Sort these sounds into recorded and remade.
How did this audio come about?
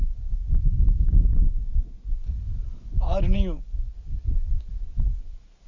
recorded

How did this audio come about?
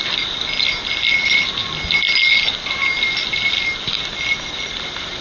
recorded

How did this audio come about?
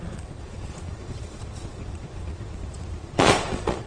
remade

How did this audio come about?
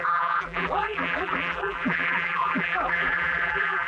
remade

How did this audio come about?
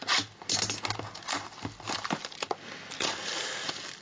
recorded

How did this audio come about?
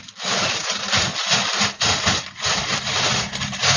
recorded